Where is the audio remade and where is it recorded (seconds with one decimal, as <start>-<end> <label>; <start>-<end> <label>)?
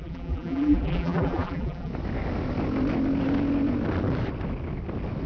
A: 0.0-1.9 remade; 1.9-5.3 recorded